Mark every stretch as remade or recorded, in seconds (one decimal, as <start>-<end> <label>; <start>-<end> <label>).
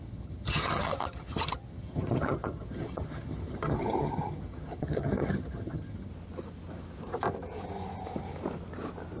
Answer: 0.0-6.1 remade; 6.1-9.2 recorded